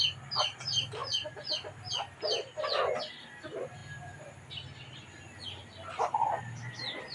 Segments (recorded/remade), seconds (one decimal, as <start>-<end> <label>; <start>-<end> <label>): 0.0-7.1 recorded